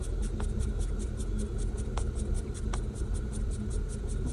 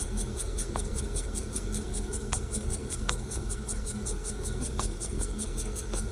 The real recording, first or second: first